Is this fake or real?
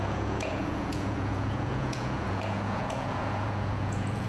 fake